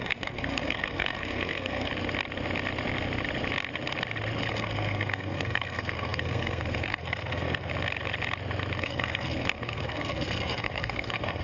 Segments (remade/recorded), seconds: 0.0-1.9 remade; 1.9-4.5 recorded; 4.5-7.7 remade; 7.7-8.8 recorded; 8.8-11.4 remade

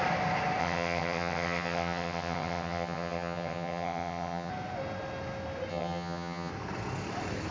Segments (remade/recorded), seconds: 0.0-0.6 recorded; 0.6-4.5 remade; 4.5-5.7 recorded; 5.7-6.5 remade; 6.5-7.5 recorded

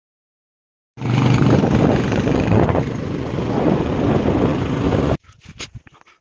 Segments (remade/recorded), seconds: 0.0-1.9 recorded; 1.9-3.9 remade; 3.9-4.5 recorded; 4.5-5.1 remade; 5.1-6.2 recorded

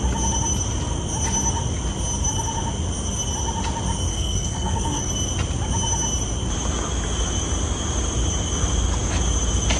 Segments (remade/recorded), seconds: 0.0-4.1 recorded; 4.1-5.1 remade; 5.1-9.8 recorded

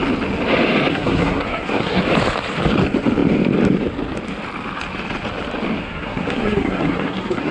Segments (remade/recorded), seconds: 0.0-0.9 recorded; 0.9-2.0 remade; 2.0-5.8 recorded; 5.8-7.5 remade